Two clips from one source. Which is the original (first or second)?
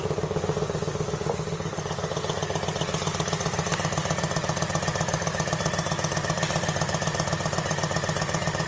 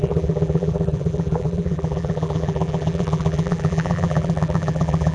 first